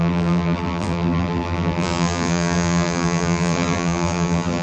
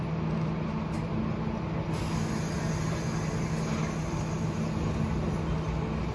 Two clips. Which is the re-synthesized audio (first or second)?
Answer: first